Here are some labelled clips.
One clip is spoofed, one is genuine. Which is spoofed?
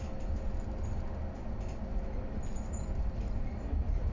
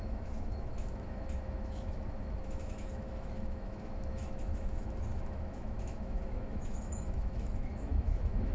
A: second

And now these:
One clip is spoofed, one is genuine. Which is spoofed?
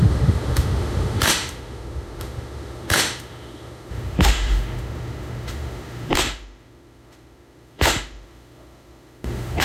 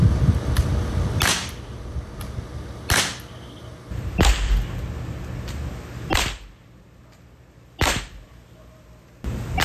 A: first